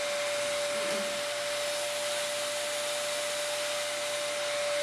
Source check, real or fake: real